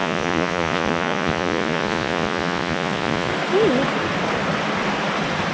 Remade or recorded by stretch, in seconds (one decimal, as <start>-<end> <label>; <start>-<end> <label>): 0.0-3.3 remade; 3.3-5.5 recorded